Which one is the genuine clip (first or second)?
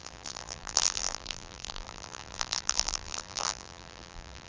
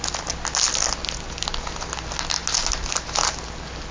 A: second